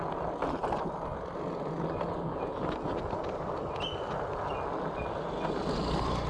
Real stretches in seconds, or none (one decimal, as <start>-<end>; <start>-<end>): 0.0-6.3